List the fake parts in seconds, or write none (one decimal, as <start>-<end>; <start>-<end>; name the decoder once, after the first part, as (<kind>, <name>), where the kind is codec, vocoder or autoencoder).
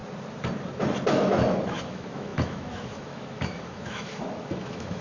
1.1-5.0 (autoencoder, DAC-VAE)